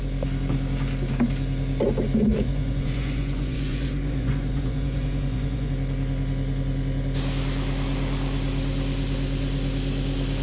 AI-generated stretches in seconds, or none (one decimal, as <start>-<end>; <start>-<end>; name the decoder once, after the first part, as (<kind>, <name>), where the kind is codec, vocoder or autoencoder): 2.2-5.7 (vocoder, Vocos)